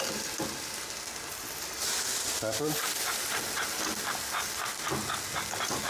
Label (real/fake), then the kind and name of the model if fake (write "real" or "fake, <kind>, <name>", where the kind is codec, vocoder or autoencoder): real